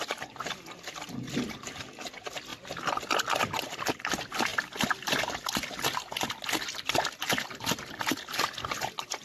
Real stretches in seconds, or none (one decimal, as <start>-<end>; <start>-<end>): 0.0-9.2